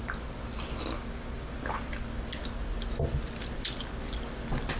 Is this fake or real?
real